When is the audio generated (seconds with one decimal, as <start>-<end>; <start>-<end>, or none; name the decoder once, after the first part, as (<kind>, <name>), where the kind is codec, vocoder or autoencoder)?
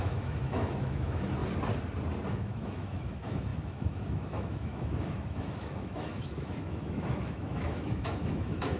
0.0-1.4 (autoencoder, DAC-VAE); 2.3-8.8